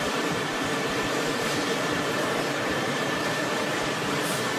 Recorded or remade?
remade